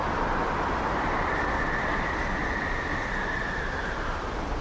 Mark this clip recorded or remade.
recorded